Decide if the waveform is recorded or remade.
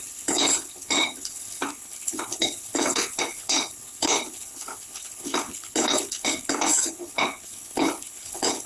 remade